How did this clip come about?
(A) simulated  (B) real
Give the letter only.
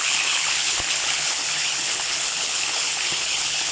A